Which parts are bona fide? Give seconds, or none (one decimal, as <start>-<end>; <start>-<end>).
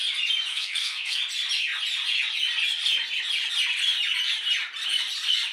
0.0-0.5; 1.2-5.5